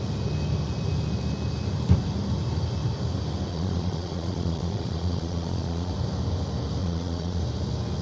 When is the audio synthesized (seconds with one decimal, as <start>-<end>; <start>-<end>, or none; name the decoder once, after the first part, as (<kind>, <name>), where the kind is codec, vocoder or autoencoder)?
3.5-5.9 (vocoder, Vocos); 6.8-7.4